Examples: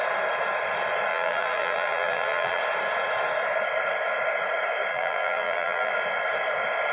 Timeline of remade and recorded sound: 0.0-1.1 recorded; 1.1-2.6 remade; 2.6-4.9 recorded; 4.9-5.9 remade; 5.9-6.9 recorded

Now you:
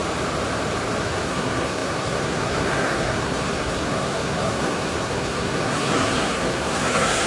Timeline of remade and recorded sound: 0.0-1.0 recorded; 1.0-7.3 remade

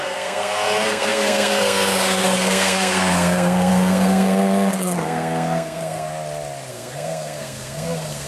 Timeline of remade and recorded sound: 0.0-6.1 remade; 6.1-6.7 recorded; 6.7-8.3 remade

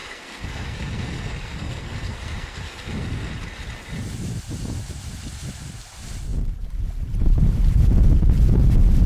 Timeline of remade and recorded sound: 0.0-3.3 remade; 3.3-9.1 recorded

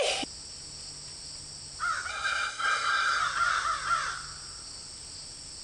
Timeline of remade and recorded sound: 0.0-2.1 recorded; 2.1-3.2 remade; 3.2-5.6 recorded